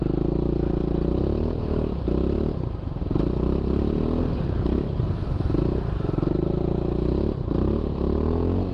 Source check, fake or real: real